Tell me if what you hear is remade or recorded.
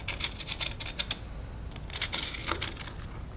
recorded